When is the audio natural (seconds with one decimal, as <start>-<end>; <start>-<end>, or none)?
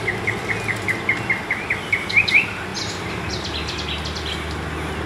0.0-2.7; 3.3-5.1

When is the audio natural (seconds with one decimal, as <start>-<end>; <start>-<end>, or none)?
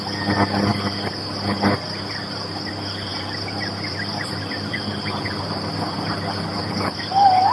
0.0-3.1; 5.7-7.5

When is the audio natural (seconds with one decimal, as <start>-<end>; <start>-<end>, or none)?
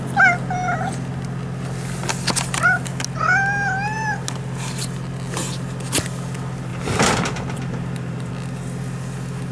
0.0-6.7; 8.3-9.5